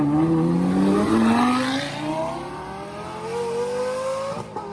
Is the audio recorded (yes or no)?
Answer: yes